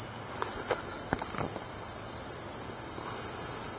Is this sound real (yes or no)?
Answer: yes